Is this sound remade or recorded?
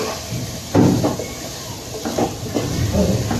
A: recorded